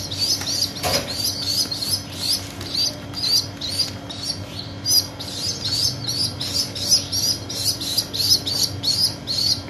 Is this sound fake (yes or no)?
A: no